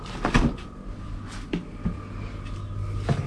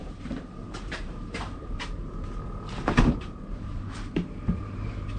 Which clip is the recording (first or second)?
first